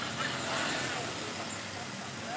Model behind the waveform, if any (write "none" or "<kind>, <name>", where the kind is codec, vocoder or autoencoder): none